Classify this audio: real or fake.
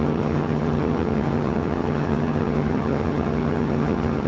fake